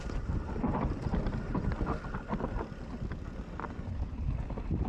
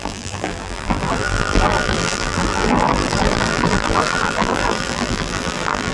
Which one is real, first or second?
first